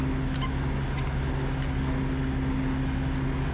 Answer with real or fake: real